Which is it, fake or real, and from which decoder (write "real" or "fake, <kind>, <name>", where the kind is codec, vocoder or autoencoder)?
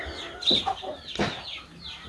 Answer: real